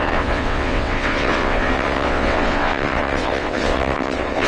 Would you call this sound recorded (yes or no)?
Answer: no